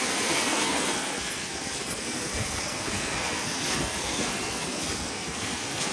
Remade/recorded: remade